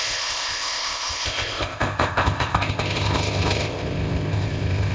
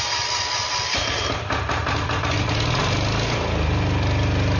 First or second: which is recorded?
second